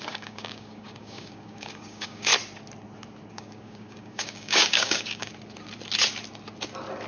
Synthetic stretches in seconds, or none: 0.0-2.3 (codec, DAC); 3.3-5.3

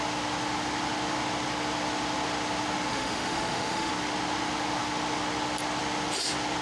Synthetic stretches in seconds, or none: 2.9-3.9 (autoencoder, DAC-VAE)